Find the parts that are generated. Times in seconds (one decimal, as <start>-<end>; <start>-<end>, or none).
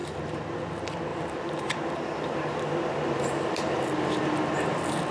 0.0-0.6; 1.1-4.2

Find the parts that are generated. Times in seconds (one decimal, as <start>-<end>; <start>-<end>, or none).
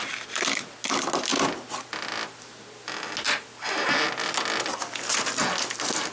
none